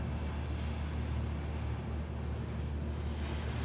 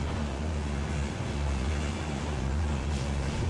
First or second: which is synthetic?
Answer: second